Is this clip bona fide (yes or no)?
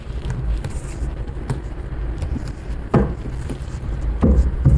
no